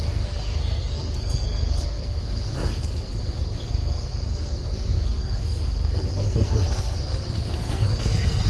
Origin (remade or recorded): remade